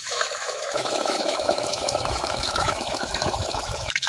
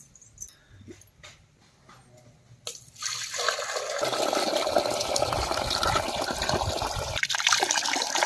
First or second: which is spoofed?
first